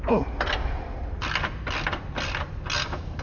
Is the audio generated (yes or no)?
no